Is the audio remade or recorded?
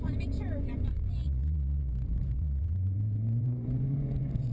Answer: remade